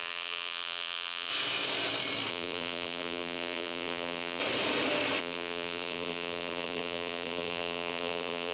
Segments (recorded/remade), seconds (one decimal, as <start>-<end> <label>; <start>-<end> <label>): 0.0-1.3 remade; 1.3-2.3 recorded; 2.3-4.4 remade; 4.4-5.2 recorded; 5.2-8.5 remade